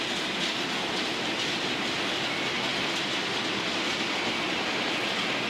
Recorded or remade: recorded